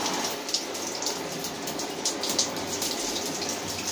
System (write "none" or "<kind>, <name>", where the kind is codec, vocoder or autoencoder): none